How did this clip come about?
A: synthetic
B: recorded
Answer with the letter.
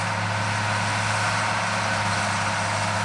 B